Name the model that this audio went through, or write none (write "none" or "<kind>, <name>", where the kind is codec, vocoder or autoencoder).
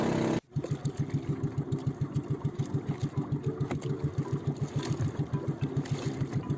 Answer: none